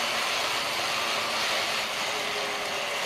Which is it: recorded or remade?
recorded